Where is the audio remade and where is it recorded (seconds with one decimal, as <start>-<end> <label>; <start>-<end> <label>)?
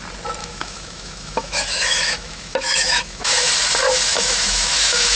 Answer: 0.0-0.4 recorded; 0.4-3.5 remade; 3.5-4.1 recorded; 4.1-5.2 remade